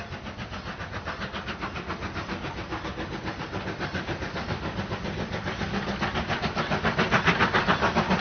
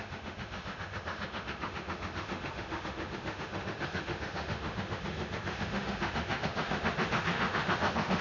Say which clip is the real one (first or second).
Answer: first